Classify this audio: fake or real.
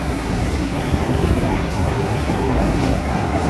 fake